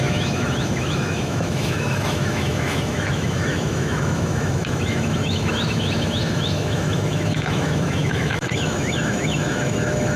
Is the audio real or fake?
fake